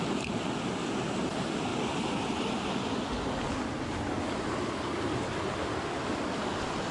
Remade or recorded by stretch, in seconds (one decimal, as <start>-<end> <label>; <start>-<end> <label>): 0.0-6.9 recorded